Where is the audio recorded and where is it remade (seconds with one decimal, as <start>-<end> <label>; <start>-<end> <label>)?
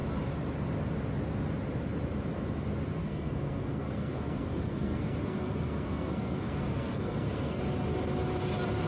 0.0-3.0 recorded; 3.0-7.6 remade; 7.6-8.9 recorded